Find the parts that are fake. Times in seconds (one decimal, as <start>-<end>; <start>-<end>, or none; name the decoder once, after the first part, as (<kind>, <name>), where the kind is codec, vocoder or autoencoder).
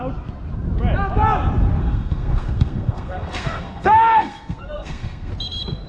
1.8-5.3 (codec, SNAC)